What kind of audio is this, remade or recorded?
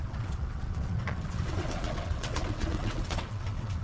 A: remade